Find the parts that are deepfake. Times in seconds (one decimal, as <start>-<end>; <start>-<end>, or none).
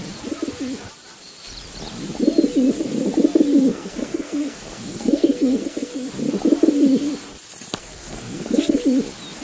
3.7-6.1; 7.8-8.8